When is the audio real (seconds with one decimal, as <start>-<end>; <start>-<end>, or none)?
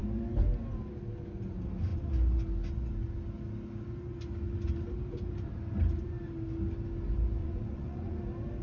0.0-7.4; 8.2-8.6